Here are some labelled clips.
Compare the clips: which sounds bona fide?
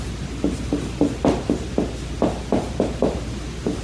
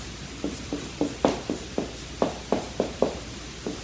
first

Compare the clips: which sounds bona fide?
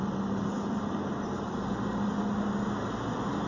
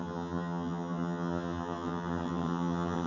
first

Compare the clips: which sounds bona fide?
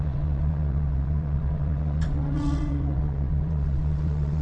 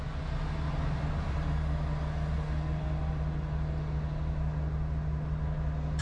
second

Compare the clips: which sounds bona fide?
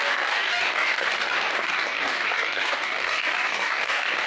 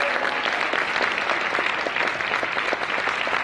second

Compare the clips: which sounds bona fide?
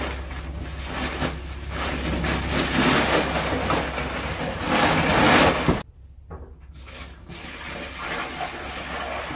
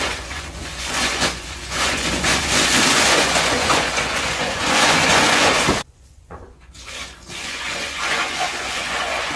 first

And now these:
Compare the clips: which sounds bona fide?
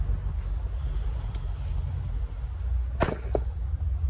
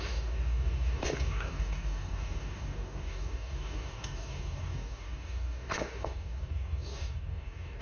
first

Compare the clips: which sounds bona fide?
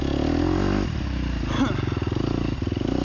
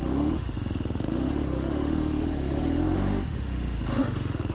first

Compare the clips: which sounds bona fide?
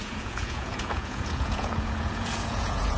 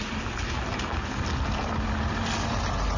second